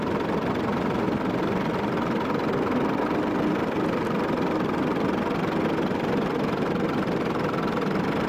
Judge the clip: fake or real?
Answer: real